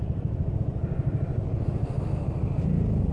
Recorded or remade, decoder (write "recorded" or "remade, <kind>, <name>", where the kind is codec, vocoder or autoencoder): recorded